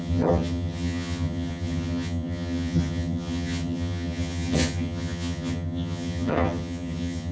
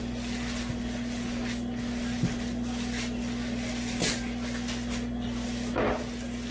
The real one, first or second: second